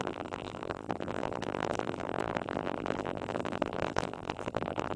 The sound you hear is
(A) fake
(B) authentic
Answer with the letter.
A